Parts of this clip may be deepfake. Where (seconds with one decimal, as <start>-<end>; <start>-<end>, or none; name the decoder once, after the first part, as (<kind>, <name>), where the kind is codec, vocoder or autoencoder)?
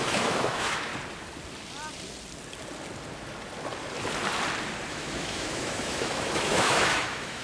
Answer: 0.0-0.9 (autoencoder, DAC-VAE); 4.9-7.4